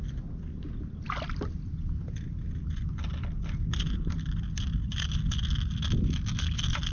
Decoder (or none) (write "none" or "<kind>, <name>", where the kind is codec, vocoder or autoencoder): none